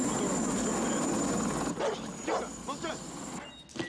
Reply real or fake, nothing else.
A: real